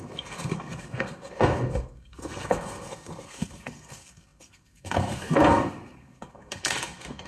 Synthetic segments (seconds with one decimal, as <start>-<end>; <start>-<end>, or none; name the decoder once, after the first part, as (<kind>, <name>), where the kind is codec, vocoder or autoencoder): 0.0-7.3 (codec, SNAC)